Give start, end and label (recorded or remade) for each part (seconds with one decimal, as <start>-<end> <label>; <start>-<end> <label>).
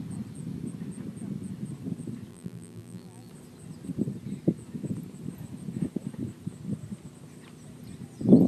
0.0-2.3 recorded; 2.3-3.3 remade; 3.3-8.5 recorded